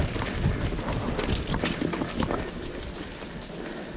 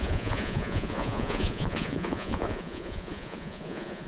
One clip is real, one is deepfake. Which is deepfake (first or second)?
second